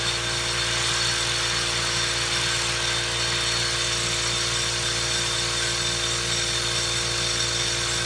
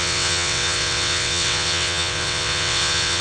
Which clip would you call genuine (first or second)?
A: first